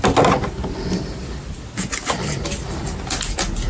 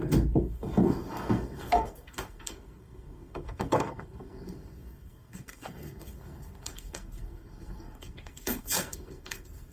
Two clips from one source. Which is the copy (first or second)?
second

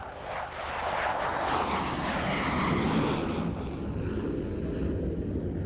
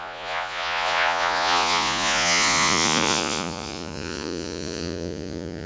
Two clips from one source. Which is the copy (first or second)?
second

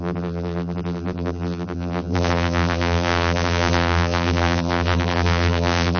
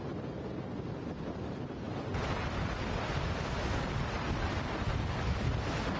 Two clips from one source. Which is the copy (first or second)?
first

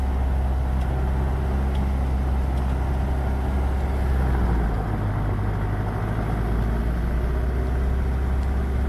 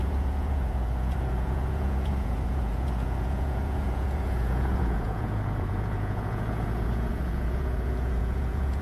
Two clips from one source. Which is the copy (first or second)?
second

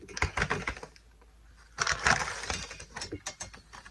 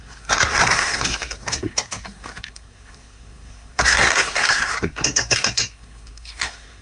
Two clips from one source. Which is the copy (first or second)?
second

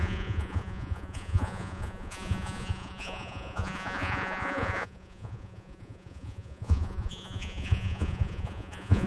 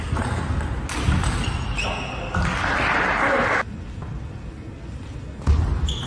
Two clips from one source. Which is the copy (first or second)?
first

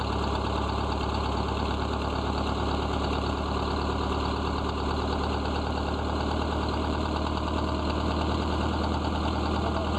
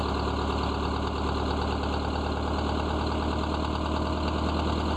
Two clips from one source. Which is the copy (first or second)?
first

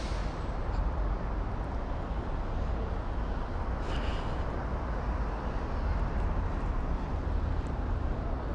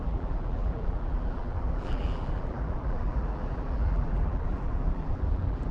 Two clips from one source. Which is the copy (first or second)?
second